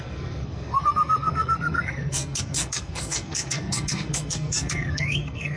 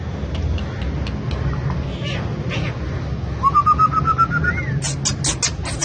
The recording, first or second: second